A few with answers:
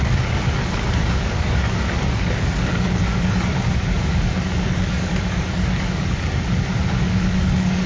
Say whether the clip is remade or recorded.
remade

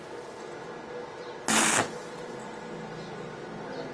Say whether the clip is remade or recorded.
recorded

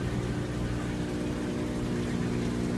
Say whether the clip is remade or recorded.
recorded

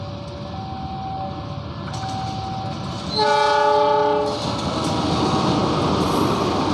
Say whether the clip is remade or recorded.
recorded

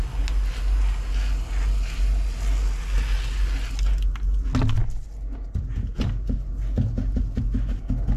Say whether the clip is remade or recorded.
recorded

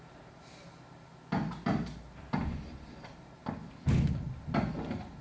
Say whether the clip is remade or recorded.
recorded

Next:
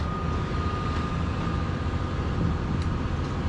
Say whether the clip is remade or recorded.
recorded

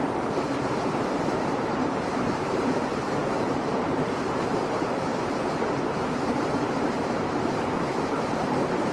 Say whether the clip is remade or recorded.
remade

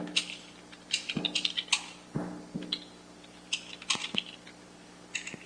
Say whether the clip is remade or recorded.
recorded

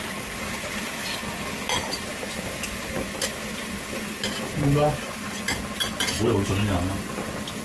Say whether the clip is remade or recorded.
recorded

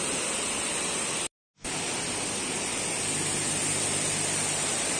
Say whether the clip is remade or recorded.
recorded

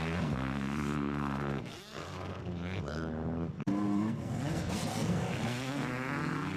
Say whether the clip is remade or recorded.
remade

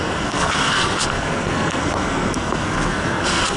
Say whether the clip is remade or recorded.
remade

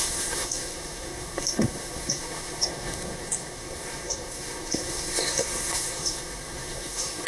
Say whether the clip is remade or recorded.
remade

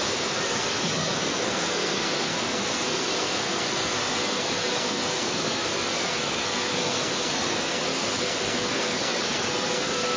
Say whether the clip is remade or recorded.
remade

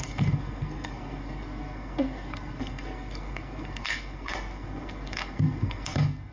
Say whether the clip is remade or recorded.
remade